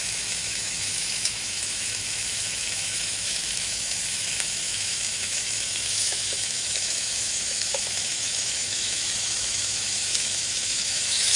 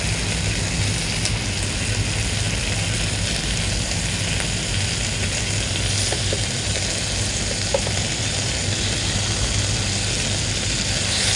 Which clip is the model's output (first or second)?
first